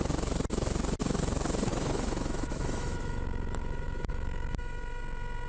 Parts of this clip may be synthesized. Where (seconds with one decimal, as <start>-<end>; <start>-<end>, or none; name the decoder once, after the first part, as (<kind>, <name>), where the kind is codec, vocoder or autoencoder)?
1.7-5.0 (autoencoder, DAC-VAE)